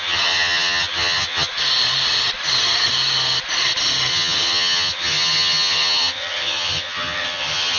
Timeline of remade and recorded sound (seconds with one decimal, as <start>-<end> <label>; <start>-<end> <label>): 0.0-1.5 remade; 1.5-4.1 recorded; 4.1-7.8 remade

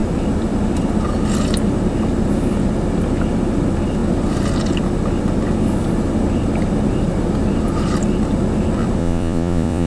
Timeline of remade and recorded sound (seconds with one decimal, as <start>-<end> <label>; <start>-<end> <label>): 0.0-9.0 recorded; 9.0-9.9 remade

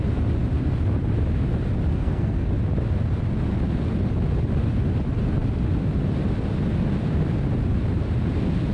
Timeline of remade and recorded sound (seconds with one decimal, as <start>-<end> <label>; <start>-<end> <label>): 0.0-1.9 recorded; 1.9-2.5 remade; 2.5-8.7 recorded

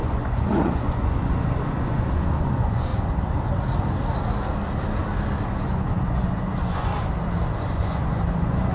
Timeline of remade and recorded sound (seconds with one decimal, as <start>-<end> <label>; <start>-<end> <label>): 0.0-2.9 remade; 2.9-5.5 recorded; 5.5-6.9 remade; 6.9-7.6 recorded; 7.6-8.7 remade

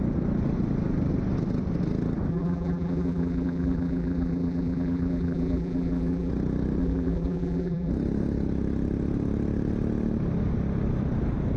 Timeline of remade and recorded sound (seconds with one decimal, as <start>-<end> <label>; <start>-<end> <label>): 0.0-2.3 recorded; 2.3-6.3 remade; 6.3-6.8 recorded; 6.8-7.9 remade; 7.9-11.6 recorded

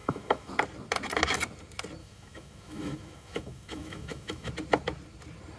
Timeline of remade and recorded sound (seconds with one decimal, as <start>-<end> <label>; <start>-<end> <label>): 0.0-0.5 remade; 0.5-2.0 recorded; 2.0-4.5 remade; 4.5-5.6 recorded

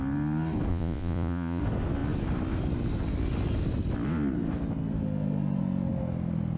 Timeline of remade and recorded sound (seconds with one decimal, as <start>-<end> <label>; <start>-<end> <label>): 0.0-0.7 recorded; 0.7-1.6 remade; 1.6-6.6 recorded